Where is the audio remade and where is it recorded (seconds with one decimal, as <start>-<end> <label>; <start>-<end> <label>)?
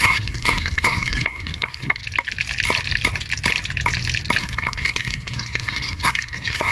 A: 0.0-2.0 remade; 2.0-4.4 recorded; 4.4-6.7 remade